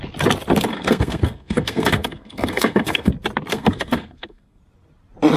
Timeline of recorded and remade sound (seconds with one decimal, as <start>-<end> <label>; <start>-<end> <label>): 0.0-0.7 recorded; 0.7-3.1 remade; 3.1-3.5 recorded; 3.5-4.6 remade; 4.6-5.4 recorded